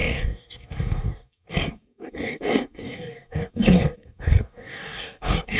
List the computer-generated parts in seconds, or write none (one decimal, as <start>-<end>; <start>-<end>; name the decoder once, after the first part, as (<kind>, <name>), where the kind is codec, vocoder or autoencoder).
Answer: 0.0-5.6 (codec, DAC)

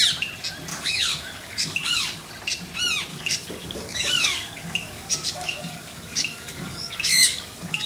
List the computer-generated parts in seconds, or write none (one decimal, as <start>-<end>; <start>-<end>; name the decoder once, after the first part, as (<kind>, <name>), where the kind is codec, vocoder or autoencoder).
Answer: 0.7-2.3 (codec, DAC); 3.1-7.9

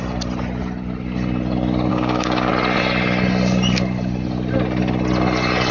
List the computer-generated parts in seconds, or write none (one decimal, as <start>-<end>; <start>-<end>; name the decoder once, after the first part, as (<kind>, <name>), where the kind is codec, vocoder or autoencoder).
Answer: 1.9-2.5 (codec, DAC)

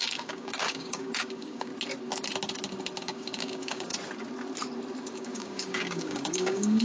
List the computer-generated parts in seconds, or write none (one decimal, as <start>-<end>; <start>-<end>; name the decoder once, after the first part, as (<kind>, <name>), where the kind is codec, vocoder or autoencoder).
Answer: 0.0-1.7 (codec, DAC); 3.0-3.9; 5.1-6.8